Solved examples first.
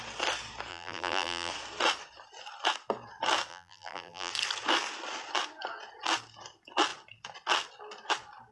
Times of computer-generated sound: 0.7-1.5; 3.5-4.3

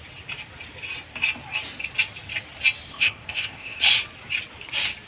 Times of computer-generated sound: 2.9-3.8

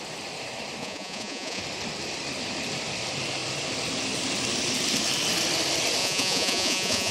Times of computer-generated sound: 0.8-1.6; 6.0-7.1

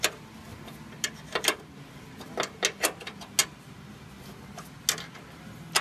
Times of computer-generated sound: none

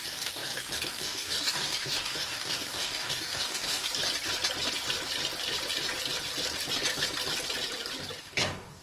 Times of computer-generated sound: 0.0-3.9; 8.2-8.8

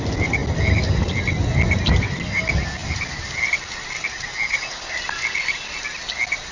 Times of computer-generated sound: none

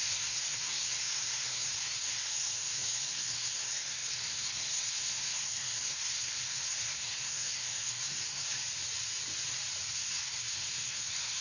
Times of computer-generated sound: 0.0-8.6; 9.9-11.4